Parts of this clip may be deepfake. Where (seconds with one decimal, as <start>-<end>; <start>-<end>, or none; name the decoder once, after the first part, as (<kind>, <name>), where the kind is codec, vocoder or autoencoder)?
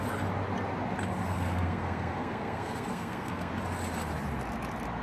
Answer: 1.2-3.5 (codec, SNAC)